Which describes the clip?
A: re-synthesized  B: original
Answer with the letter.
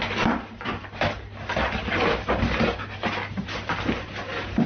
B